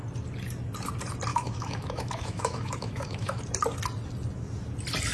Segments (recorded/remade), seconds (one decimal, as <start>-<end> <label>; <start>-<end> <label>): 0.0-1.3 recorded; 1.3-3.4 remade; 3.4-5.1 recorded